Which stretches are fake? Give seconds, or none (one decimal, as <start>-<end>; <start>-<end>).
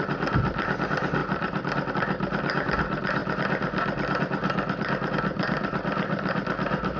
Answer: 0.0-3.2; 5.1-7.0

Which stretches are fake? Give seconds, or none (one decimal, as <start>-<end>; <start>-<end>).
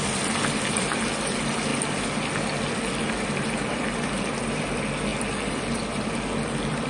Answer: 0.0-1.7; 3.1-6.9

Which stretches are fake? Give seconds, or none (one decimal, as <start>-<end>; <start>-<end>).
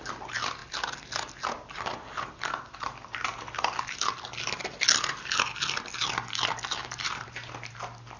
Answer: 6.8-7.7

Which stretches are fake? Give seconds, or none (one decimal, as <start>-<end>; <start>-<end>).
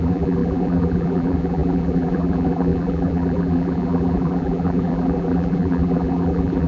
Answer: 0.0-6.7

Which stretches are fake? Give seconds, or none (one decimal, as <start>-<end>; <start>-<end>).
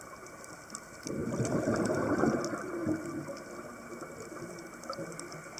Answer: none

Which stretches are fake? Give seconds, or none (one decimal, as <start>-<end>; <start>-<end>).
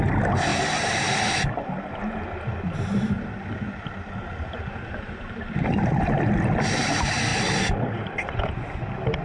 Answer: 7.3-8.5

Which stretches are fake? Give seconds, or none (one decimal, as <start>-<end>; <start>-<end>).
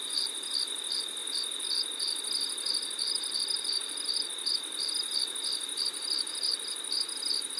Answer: 1.2-4.9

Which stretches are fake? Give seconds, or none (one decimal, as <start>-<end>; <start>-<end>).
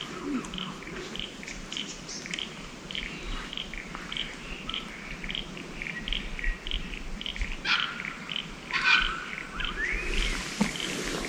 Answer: 1.1-4.8